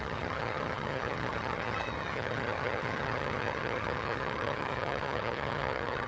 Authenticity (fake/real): fake